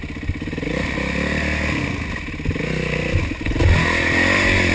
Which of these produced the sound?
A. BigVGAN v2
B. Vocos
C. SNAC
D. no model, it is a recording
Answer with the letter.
D